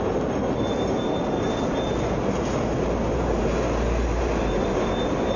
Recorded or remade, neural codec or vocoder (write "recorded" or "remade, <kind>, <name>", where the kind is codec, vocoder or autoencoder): recorded